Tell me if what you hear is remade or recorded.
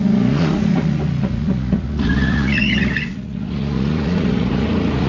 remade